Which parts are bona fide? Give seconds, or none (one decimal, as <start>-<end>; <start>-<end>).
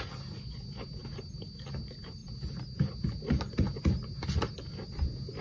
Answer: 0.0-5.4